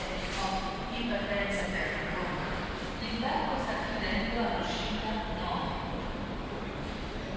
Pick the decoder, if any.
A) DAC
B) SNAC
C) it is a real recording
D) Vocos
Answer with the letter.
C